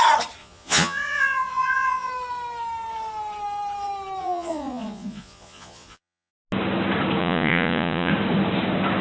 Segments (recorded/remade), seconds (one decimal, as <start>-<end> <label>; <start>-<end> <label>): 0.0-0.4 recorded; 0.4-2.1 remade; 2.1-4.2 recorded; 4.2-6.3 remade; 6.3-7.2 recorded; 7.2-8.1 remade; 8.1-9.0 recorded